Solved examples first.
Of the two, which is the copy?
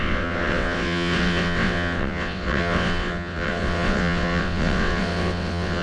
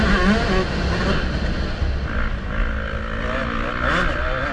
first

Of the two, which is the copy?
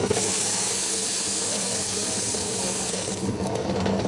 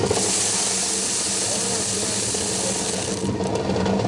first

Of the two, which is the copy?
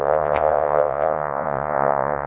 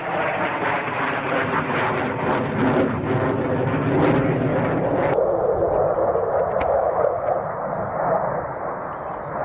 first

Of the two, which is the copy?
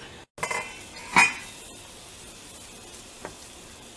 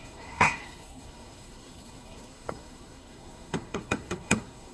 second